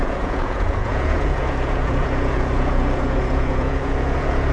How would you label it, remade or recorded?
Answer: remade